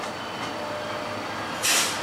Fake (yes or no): no